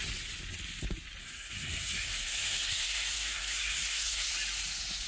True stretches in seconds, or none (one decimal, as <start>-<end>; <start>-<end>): 0.0-1.2; 4.3-5.1